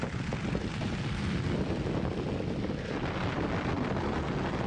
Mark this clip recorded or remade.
recorded